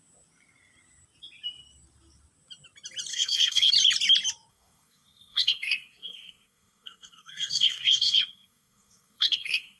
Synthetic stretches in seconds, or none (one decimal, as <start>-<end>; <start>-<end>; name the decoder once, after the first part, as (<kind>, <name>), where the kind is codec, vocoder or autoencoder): 3.1-3.7 (codec, SNAC); 4.5-9.8